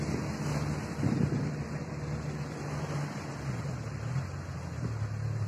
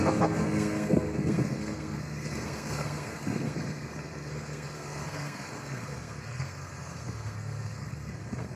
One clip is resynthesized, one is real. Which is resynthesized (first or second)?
second